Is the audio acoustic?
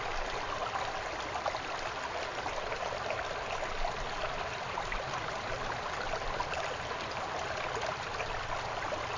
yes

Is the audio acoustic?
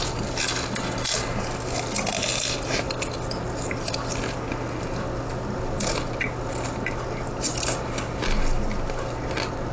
yes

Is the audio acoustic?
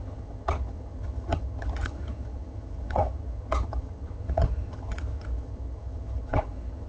no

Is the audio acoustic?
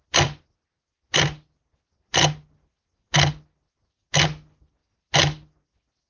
yes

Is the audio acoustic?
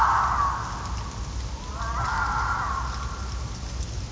yes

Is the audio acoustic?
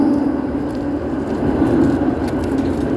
yes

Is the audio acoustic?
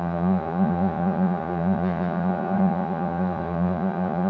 no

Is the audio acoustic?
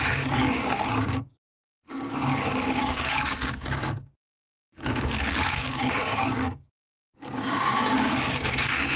no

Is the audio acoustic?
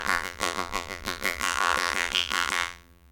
no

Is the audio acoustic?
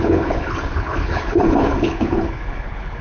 no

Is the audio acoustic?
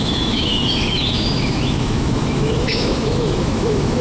no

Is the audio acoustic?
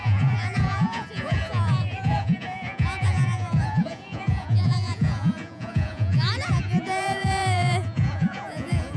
no